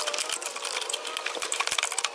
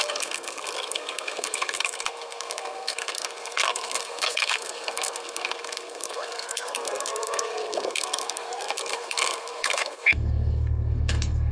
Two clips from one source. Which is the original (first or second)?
first